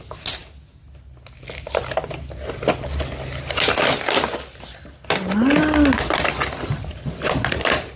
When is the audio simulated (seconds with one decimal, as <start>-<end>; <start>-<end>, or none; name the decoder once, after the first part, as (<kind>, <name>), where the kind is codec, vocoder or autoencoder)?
none